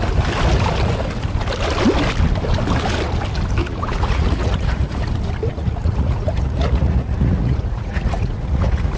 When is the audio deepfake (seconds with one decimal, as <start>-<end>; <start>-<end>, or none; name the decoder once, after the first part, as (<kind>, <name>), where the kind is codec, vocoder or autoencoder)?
3.6-5.1 (vocoder, Vocos); 5.5-9.0